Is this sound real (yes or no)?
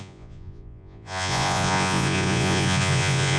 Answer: no